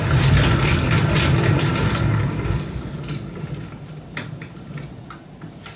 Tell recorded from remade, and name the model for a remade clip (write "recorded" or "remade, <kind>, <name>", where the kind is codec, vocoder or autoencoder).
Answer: recorded